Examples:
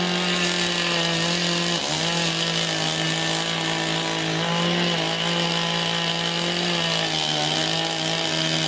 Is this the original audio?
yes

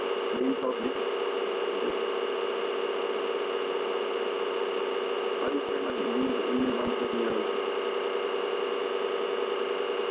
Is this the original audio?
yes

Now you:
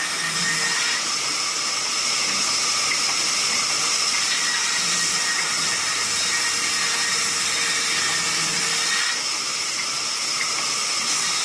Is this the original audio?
yes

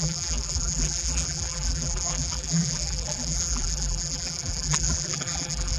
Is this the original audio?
no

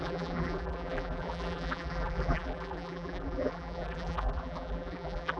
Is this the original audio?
no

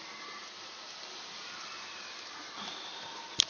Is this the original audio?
yes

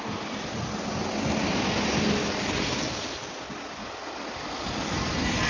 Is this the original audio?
yes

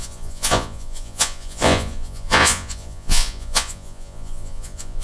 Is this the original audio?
no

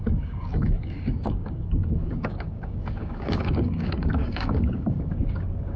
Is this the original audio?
no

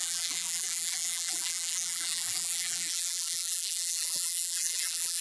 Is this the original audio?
no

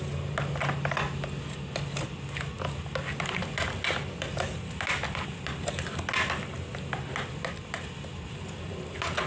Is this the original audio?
yes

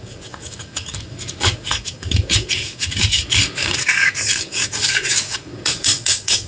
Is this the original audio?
no